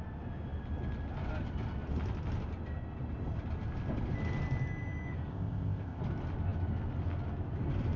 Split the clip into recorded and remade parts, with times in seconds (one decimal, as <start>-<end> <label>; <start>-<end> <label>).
0.0-5.3 recorded; 5.3-6.0 remade; 6.0-8.0 recorded